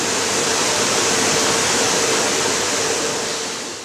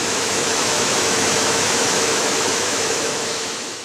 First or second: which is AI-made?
second